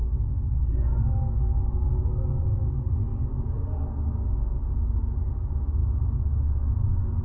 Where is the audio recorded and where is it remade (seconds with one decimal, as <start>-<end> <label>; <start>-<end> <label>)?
0.0-7.2 recorded

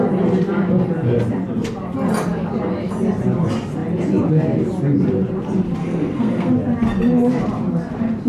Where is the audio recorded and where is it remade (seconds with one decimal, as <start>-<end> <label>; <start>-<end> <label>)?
0.0-5.8 recorded; 5.8-6.5 remade; 6.5-8.3 recorded

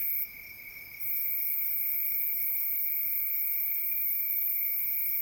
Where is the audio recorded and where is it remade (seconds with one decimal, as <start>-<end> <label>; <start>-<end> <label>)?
0.0-3.8 recorded; 3.8-4.8 remade; 4.8-5.2 recorded

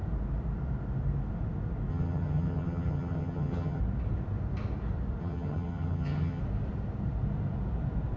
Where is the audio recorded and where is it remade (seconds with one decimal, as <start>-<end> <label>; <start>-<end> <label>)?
0.0-1.9 recorded; 1.9-3.8 remade; 3.8-5.2 recorded; 5.2-6.4 remade; 6.4-8.2 recorded

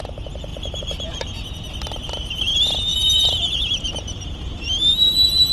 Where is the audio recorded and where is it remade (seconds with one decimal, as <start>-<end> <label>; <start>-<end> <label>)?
0.0-0.5 recorded; 0.5-2.5 remade; 2.5-2.9 recorded; 2.9-5.5 remade

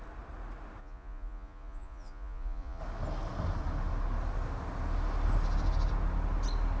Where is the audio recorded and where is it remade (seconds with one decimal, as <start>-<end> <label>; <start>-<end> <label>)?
0.0-0.8 recorded; 0.8-2.8 remade; 2.8-6.8 recorded

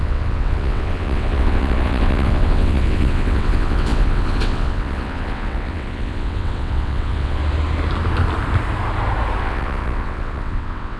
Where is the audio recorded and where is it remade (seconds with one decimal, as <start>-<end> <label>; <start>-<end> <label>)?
0.0-7.4 remade; 7.4-9.4 recorded; 9.4-11.0 remade

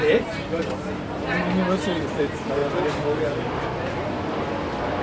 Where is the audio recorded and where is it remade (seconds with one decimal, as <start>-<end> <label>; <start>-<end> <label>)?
0.0-5.0 recorded